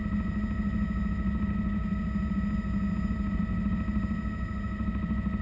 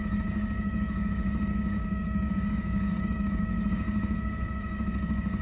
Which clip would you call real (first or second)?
first